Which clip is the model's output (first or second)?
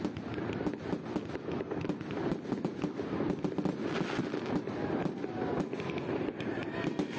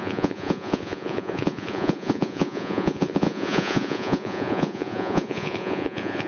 second